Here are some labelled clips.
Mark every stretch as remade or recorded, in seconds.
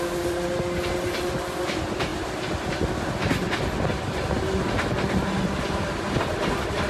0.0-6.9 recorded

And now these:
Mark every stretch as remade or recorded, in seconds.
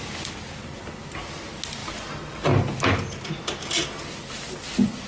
0.0-5.1 recorded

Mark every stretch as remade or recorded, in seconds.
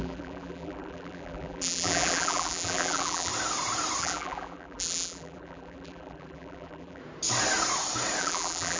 0.0-3.3 remade; 3.3-4.0 recorded; 4.0-7.0 remade; 7.0-8.2 recorded; 8.2-8.8 remade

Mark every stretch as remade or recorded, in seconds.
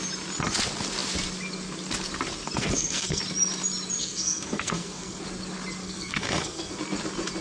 0.0-2.6 recorded; 2.6-3.2 remade; 3.2-4.0 recorded; 4.0-5.2 remade; 5.2-5.8 recorded; 5.8-6.8 remade; 6.8-7.4 recorded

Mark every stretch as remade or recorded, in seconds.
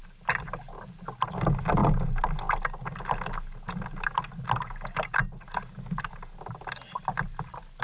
0.0-7.8 recorded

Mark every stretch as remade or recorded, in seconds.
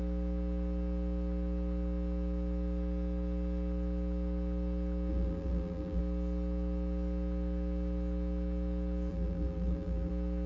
0.0-5.1 recorded; 5.1-6.0 remade; 6.0-9.1 recorded; 9.1-10.1 remade; 10.1-10.5 recorded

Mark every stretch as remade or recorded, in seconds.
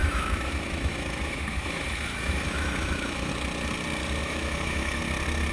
0.0-3.3 remade; 3.3-4.2 recorded; 4.2-5.0 remade; 5.0-5.5 recorded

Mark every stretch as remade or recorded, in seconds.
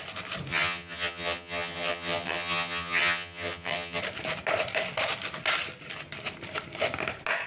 0.0-0.5 recorded; 0.5-4.0 remade; 4.0-7.5 recorded